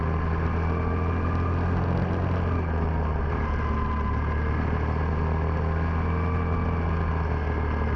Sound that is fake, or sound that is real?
real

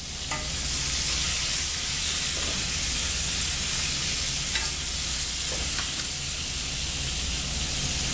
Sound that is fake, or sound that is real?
real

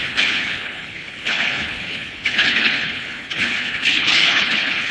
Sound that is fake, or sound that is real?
fake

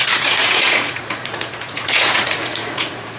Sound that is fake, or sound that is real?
fake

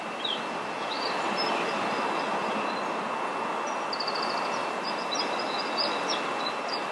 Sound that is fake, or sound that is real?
real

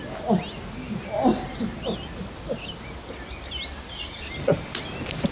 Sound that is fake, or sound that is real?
real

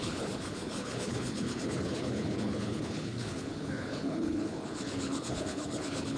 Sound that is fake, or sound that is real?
fake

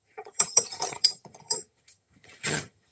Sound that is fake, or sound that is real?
fake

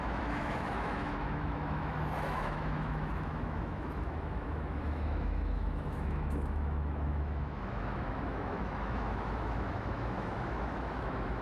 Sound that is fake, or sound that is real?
fake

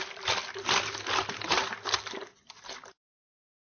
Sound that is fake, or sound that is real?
real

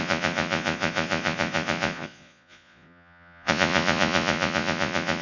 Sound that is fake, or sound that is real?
fake